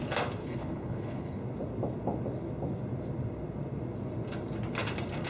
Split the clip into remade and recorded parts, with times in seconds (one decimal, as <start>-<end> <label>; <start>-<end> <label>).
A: 0.0-0.4 recorded; 0.4-1.4 remade; 1.4-5.3 recorded